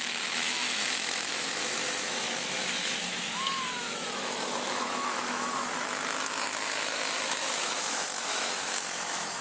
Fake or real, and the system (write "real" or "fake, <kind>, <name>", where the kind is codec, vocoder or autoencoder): fake, autoencoder, DAC-VAE